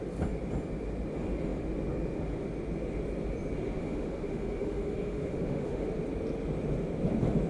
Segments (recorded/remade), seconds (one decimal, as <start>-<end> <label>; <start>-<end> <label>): 0.0-3.8 recorded; 3.8-5.9 remade; 5.9-7.5 recorded

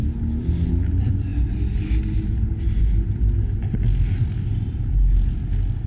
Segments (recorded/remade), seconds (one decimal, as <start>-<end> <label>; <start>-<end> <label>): 0.0-5.9 recorded